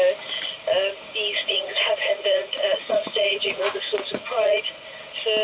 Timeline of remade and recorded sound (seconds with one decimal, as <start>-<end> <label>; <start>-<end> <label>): 0.0-1.4 recorded; 1.4-4.6 remade; 4.6-5.4 recorded